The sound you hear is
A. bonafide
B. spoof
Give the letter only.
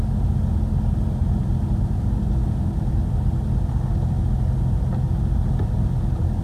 A